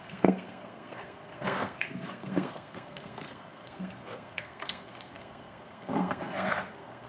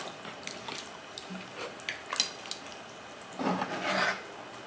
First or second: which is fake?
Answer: first